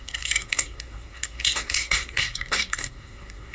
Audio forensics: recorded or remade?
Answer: remade